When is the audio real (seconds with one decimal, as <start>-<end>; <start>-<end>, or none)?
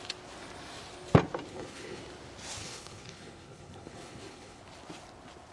0.0-1.5; 2.0-2.6; 4.6-5.5